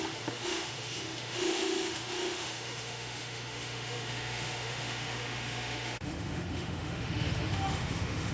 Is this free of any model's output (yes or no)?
no